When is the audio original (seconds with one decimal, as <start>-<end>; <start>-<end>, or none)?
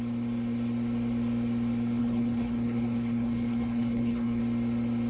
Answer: 0.0-2.0; 4.4-5.1